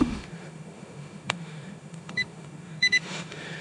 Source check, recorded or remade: remade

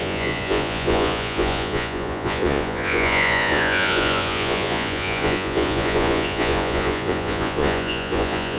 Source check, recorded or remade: remade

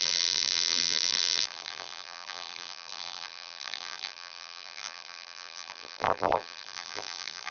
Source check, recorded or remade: remade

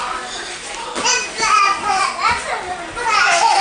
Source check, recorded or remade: recorded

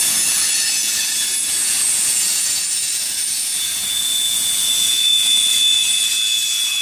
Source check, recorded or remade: remade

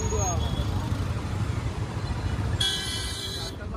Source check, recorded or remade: remade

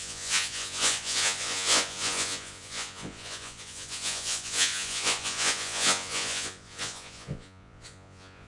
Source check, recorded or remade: remade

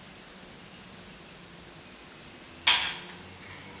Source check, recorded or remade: recorded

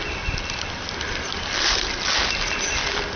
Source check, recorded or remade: recorded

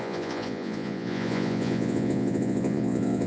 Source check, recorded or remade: remade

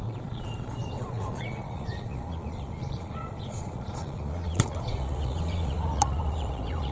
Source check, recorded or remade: remade